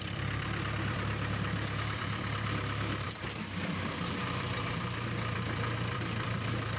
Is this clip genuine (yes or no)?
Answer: no